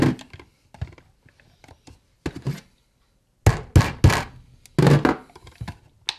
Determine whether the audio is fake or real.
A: real